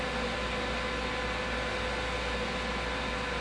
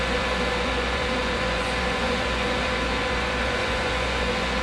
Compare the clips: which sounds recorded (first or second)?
first